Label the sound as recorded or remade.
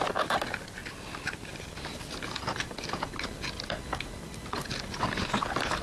recorded